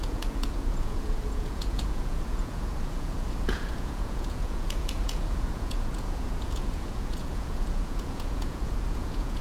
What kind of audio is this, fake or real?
fake